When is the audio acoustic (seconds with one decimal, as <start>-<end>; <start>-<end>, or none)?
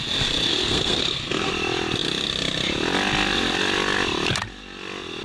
0.0-0.5; 1.5-5.2